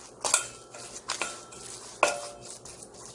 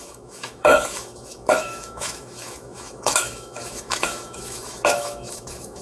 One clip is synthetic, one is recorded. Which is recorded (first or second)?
first